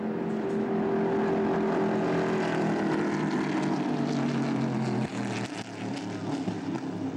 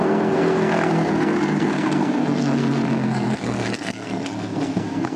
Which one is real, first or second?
first